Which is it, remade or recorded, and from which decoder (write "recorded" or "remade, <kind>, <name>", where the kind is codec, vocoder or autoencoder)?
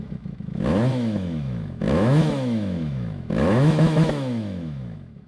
remade, autoencoder, DAC-VAE